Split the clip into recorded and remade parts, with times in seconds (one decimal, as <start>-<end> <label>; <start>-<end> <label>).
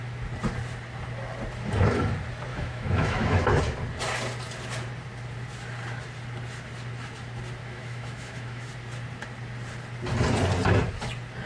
0.0-2.5 recorded; 2.5-3.4 remade; 3.4-7.6 recorded; 7.6-8.7 remade; 8.7-11.5 recorded